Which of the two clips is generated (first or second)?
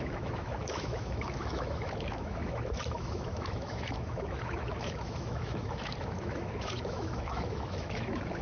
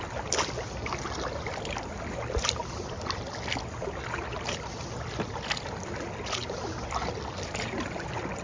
first